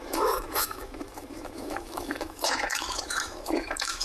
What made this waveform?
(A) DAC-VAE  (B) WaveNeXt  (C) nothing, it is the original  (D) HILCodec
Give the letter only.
A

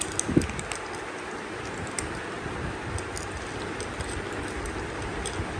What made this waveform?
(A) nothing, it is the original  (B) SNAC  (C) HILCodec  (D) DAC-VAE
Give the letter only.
A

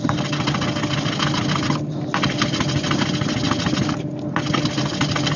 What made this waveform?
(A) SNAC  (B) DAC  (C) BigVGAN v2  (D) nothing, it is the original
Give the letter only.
D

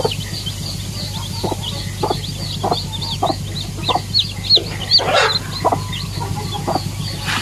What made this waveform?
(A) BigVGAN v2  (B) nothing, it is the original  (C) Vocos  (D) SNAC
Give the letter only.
B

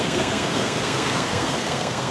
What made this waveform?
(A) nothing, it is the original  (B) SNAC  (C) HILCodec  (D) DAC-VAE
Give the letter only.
B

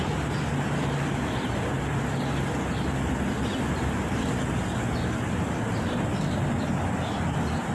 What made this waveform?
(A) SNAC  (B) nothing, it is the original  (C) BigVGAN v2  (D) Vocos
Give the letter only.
B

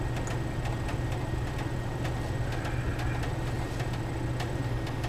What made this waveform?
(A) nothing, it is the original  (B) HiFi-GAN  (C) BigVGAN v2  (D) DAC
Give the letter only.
A